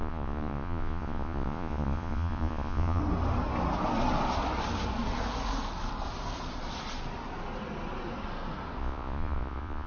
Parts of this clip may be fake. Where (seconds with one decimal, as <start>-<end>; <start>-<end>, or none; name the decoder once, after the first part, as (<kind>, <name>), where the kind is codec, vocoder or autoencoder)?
0.0-3.0 (vocoder, Vocos); 8.8-9.9